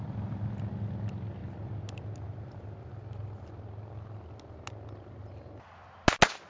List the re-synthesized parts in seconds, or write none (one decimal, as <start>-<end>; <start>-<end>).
none